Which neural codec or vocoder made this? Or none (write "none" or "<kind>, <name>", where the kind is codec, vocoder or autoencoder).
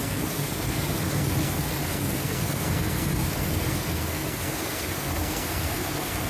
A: codec, SNAC